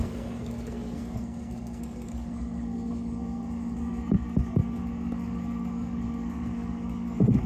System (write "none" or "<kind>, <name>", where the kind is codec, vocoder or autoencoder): codec, SNAC